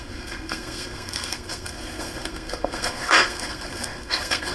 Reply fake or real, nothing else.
fake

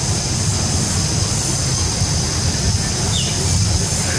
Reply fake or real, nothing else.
real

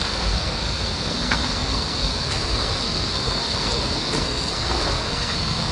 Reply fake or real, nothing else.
fake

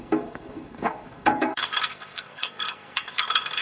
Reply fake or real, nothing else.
fake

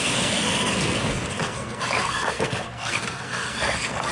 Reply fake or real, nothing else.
fake